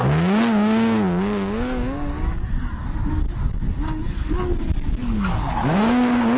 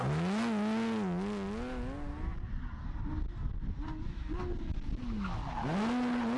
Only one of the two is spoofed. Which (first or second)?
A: first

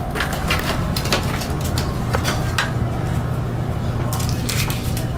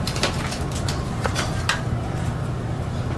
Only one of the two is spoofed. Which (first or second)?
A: second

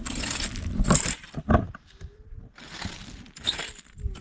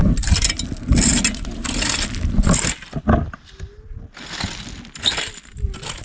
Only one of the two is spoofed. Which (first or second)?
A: first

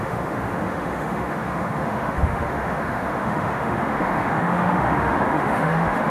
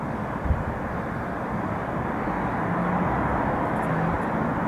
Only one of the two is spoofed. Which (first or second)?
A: first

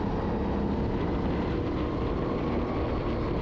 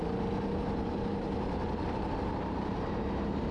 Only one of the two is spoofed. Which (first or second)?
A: second